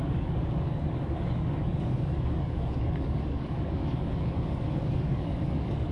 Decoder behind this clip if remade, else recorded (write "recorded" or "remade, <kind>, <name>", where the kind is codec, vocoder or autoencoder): remade, codec, DAC